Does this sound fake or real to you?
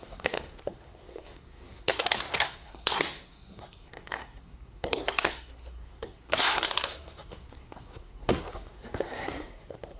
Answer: fake